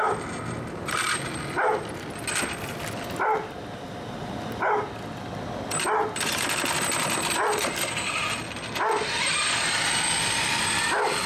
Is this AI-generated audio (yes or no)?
no